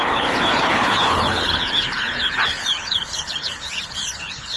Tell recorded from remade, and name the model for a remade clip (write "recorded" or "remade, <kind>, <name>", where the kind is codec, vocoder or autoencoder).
remade, codec, HILCodec